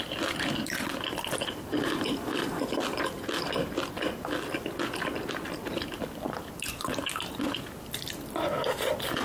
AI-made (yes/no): no